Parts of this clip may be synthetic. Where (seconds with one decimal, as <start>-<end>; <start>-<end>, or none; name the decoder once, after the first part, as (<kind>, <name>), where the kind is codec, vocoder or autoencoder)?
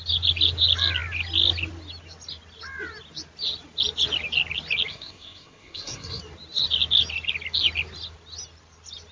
4.9-6.2 (codec, SNAC)